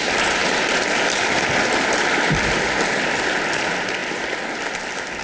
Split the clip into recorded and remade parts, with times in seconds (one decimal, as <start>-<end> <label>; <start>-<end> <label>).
0.0-5.2 recorded